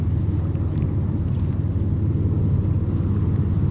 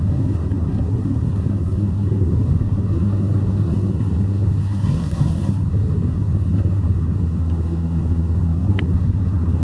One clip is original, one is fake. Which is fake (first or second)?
second